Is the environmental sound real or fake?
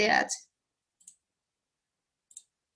real